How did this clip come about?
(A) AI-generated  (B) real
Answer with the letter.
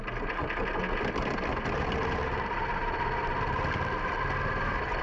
B